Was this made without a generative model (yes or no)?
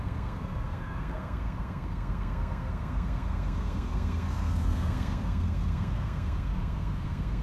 no